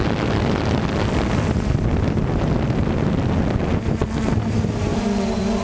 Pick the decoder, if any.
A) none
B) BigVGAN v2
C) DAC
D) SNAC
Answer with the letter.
A